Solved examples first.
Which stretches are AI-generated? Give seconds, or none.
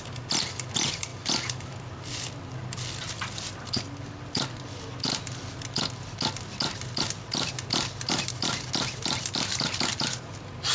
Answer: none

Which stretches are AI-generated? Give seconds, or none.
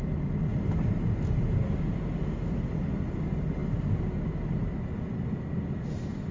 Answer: none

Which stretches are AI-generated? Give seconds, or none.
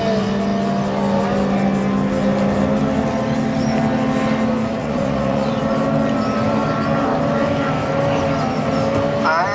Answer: 4.8-5.5 (vocoder, Vocos)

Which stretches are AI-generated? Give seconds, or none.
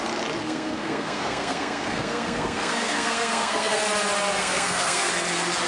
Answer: 0.4-3.8 (codec, SNAC); 4.4-5.1